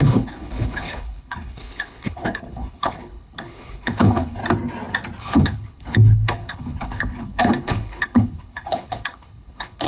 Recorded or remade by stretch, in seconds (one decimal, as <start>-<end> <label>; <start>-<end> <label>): 0.0-4.4 remade; 4.4-5.2 recorded; 5.2-9.9 remade

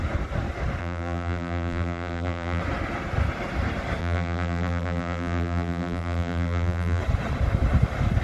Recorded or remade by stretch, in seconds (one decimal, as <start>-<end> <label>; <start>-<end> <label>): 0.0-0.8 recorded; 0.8-2.6 remade; 2.6-4.0 recorded; 4.0-7.0 remade; 7.0-8.2 recorded

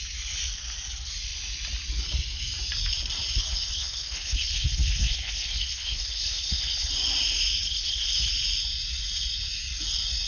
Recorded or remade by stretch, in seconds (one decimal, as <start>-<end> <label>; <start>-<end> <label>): 0.0-3.5 recorded; 3.5-6.9 remade; 6.9-7.6 recorded; 7.6-8.3 remade; 8.3-10.3 recorded

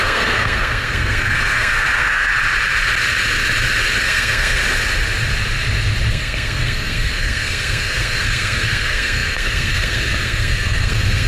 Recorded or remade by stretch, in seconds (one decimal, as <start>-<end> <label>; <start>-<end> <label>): 0.0-2.3 remade; 2.3-4.0 recorded; 4.0-4.6 remade; 4.6-6.1 recorded; 6.1-11.3 remade